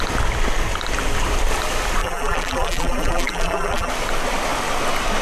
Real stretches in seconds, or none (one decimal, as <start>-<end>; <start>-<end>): 0.0-2.0; 3.9-5.2